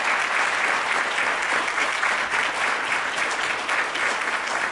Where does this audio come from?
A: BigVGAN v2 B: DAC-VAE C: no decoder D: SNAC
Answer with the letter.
C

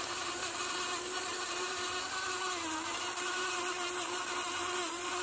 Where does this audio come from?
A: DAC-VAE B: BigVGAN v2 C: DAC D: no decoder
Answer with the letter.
D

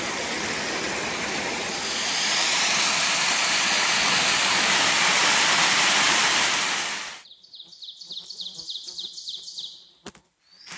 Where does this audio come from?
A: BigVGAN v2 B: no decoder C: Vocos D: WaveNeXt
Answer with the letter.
A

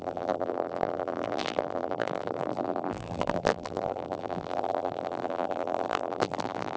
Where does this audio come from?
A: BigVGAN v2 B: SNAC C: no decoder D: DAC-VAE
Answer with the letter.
A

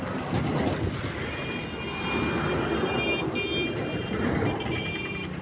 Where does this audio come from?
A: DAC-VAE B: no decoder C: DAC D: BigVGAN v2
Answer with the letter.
B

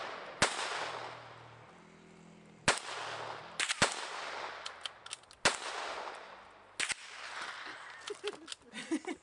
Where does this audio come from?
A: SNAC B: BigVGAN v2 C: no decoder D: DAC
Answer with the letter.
C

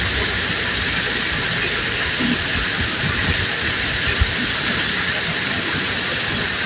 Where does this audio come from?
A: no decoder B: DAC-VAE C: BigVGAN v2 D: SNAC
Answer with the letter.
A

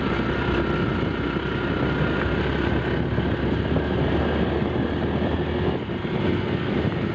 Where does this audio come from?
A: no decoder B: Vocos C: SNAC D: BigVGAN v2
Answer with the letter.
A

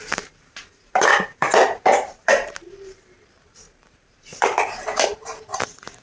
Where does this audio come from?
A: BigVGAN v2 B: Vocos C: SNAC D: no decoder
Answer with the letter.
A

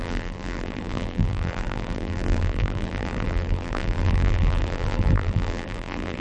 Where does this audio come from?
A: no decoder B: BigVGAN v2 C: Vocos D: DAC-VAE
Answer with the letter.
B